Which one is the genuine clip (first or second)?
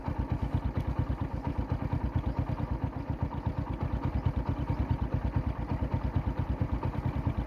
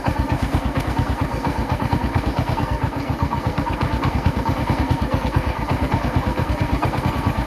first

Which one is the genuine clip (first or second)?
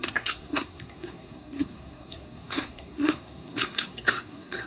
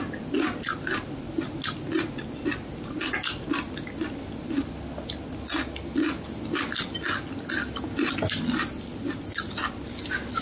second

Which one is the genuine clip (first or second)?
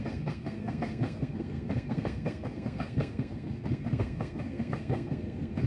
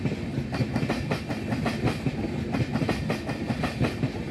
second